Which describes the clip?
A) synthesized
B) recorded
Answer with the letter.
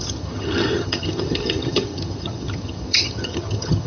A